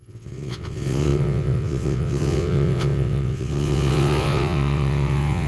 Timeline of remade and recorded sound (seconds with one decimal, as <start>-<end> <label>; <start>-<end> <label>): 0.0-5.5 remade

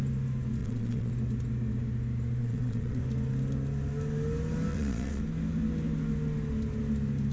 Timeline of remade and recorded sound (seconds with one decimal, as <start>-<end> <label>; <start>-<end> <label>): 0.0-0.6 recorded; 0.6-1.1 remade; 1.1-2.4 recorded; 2.4-3.0 remade; 3.0-4.7 recorded; 4.7-5.2 remade; 5.2-7.3 recorded